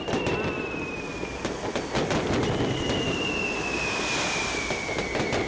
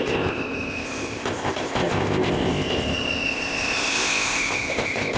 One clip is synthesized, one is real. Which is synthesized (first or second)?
second